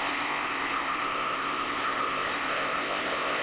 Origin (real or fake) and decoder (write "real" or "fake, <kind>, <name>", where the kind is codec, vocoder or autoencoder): fake, codec, ZipCodec